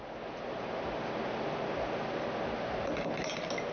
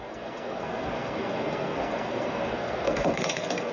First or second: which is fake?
second